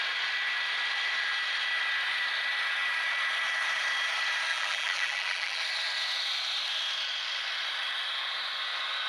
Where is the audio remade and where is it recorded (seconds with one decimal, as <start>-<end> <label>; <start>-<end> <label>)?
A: 0.0-4.5 recorded; 4.5-5.6 remade; 5.6-9.1 recorded